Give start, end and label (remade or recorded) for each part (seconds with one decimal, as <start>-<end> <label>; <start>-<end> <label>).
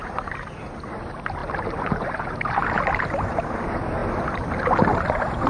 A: 0.0-5.5 recorded